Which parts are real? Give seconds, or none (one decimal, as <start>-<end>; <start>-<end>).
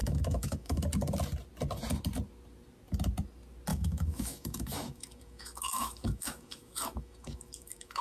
0.8-3.7